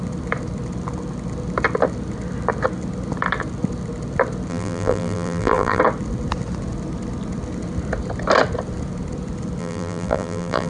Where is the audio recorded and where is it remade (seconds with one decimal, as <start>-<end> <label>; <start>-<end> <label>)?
0.0-4.5 recorded; 4.5-5.8 remade; 5.8-9.6 recorded; 9.6-10.7 remade